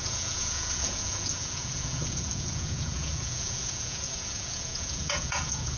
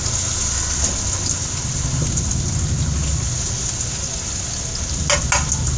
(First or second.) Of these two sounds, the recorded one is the second